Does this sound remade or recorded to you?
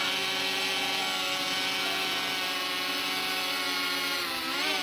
recorded